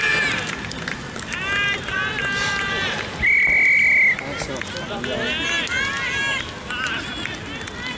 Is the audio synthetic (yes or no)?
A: no